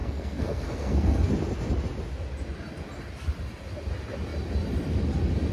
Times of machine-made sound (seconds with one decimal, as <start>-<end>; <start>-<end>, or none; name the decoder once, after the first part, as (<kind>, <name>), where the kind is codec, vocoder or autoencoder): 0.0-1.3 (codec, SNAC)